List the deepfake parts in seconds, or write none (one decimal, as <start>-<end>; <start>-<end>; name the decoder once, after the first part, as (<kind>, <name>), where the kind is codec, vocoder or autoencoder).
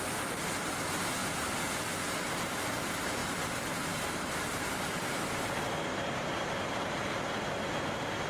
3.2-7.1 (vocoder, BigVGAN v2)